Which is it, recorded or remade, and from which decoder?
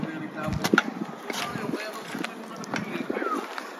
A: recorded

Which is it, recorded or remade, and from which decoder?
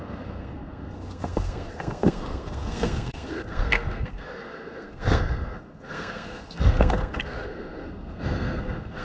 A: remade, codec, SNAC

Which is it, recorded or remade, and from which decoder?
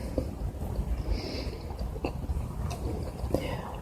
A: recorded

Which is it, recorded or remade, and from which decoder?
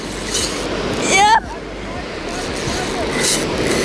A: recorded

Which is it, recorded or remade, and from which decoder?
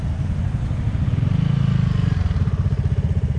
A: recorded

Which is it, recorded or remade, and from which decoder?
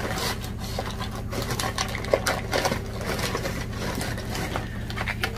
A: recorded